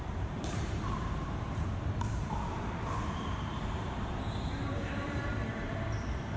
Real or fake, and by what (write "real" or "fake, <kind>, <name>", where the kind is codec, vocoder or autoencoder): fake, vocoder, BigVGAN v2